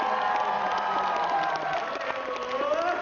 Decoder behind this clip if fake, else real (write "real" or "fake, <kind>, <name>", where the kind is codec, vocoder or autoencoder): real